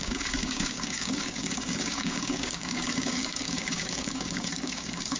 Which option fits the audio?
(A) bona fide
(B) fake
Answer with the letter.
B